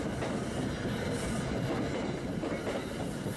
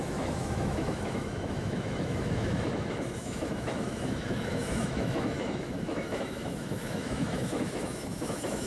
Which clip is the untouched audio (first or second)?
first